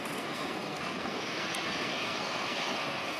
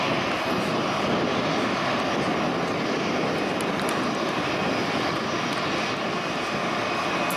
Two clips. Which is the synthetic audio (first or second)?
first